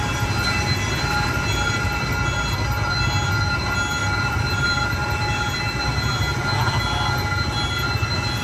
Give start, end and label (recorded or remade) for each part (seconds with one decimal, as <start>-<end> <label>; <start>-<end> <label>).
0.0-4.0 recorded; 4.0-5.9 remade; 5.9-8.4 recorded